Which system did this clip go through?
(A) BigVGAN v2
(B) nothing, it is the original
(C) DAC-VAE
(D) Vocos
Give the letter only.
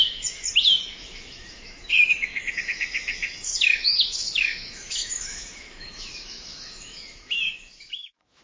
C